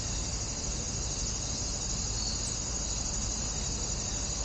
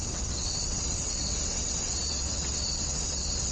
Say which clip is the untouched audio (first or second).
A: first